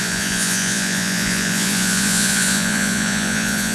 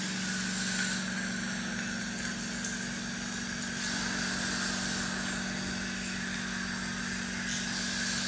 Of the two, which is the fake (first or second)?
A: first